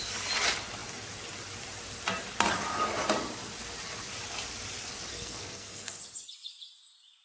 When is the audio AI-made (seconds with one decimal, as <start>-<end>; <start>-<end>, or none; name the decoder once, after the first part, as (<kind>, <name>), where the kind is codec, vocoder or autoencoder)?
5.1-6.0 (codec, SNAC)